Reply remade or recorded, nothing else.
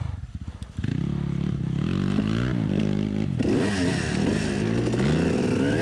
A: recorded